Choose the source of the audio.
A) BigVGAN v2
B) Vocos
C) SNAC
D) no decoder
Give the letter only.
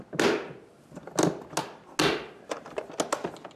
D